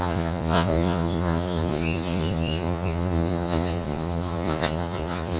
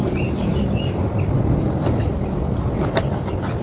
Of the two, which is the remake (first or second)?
first